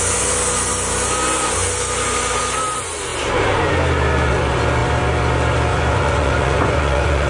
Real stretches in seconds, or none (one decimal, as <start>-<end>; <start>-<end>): 0.0-5.7